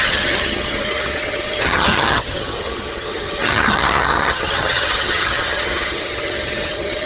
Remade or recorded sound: remade